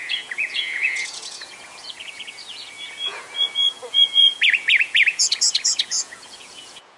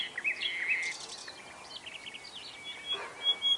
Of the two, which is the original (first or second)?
second